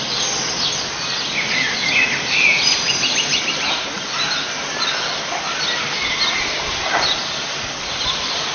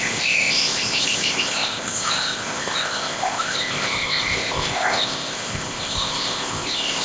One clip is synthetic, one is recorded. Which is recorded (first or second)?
first